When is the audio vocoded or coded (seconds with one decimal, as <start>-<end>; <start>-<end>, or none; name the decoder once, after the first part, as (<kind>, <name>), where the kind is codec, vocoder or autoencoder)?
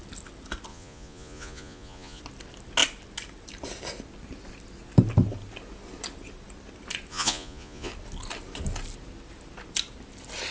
0.7-2.2 (vocoder, Vocos); 7.1-7.9